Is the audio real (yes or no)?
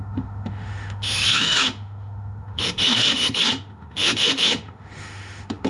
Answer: no